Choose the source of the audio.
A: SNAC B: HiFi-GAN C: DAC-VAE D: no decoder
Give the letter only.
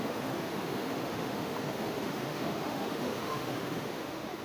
C